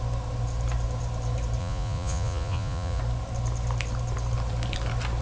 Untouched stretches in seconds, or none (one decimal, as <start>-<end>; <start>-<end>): 0.0-1.6; 3.0-5.2